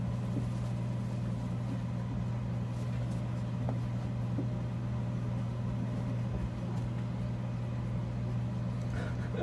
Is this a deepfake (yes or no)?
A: no